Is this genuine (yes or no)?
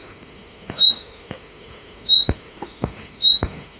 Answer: no